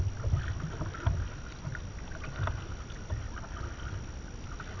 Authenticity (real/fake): real